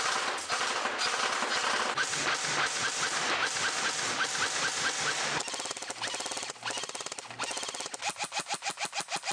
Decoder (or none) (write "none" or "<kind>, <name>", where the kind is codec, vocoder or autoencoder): none